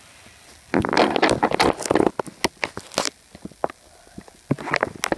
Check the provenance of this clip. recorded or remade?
recorded